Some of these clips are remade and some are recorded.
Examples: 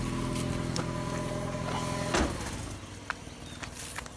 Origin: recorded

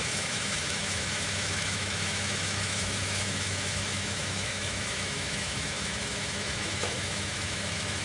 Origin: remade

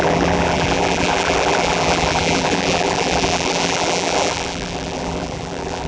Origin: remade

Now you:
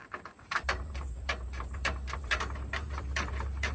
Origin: remade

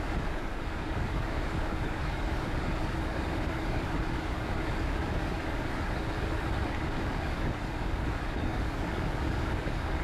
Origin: remade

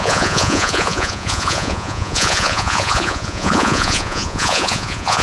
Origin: remade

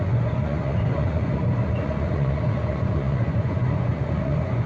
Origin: remade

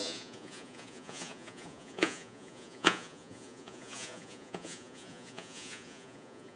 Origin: remade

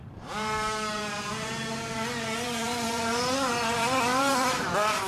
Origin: remade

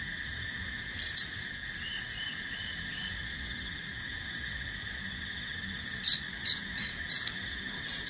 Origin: recorded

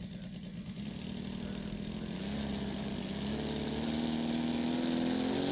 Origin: recorded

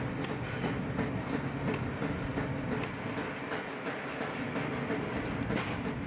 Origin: recorded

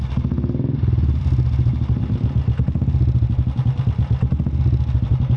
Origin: recorded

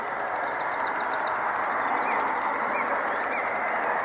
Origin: recorded